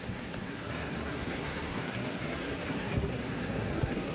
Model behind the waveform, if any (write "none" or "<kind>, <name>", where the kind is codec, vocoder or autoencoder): codec, SNAC